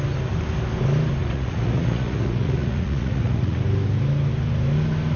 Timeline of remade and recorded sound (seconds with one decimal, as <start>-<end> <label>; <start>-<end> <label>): 0.0-1.2 recorded; 1.2-3.6 remade; 3.6-5.2 recorded